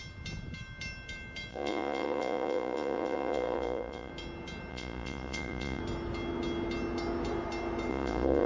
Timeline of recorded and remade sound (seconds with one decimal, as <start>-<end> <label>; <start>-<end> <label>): 0.0-1.5 recorded; 1.5-4.1 remade; 4.1-4.7 recorded; 4.7-5.8 remade; 5.8-7.9 recorded; 7.9-8.5 remade